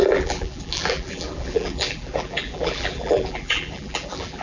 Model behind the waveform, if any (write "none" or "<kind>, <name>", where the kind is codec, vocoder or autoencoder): vocoder, BigVGAN v2